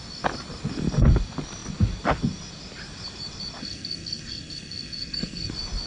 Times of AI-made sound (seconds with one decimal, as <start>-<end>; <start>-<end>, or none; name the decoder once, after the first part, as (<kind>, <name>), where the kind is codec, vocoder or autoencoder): 3.6-5.5 (codec, SNAC)